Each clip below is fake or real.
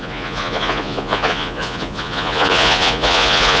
fake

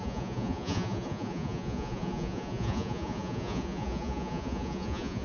fake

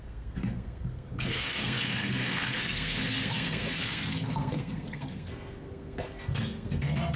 fake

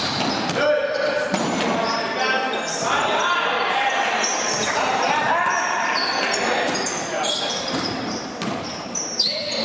fake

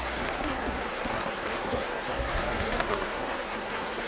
fake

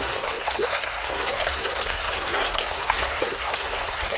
fake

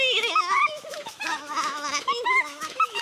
fake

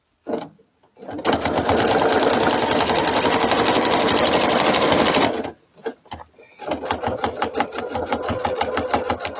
real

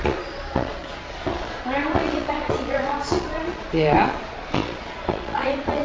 fake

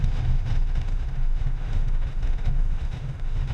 fake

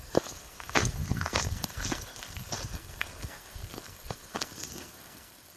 fake